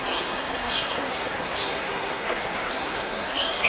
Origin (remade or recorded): remade